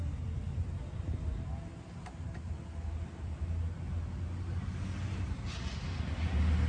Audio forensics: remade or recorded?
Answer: recorded